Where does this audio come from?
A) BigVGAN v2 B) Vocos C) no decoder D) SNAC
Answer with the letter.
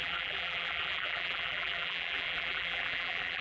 A